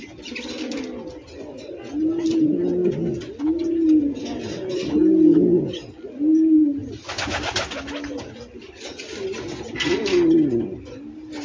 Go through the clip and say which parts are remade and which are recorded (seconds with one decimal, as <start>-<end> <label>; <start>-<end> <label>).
0.0-11.4 recorded